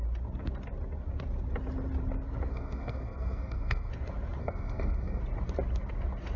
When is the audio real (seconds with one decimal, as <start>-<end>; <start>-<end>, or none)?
0.0-2.5; 3.9-4.4; 5.2-6.4